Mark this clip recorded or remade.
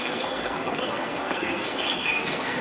remade